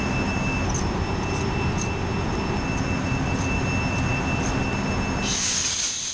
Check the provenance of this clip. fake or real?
real